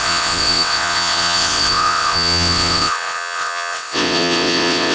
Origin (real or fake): fake